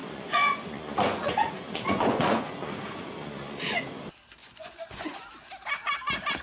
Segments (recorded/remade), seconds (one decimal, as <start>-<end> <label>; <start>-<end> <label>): 0.0-3.8 remade; 3.8-4.4 recorded; 4.4-5.3 remade; 5.3-6.4 recorded